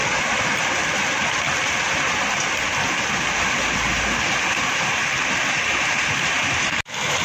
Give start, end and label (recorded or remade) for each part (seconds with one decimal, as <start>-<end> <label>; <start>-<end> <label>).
0.0-7.2 recorded